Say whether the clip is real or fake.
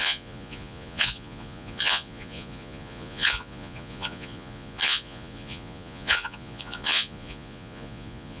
fake